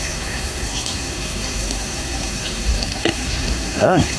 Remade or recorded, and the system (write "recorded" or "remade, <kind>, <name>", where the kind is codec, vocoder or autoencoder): remade, codec, SNAC